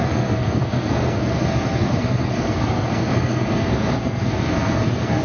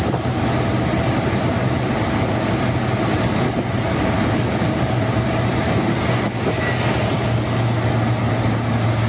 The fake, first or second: first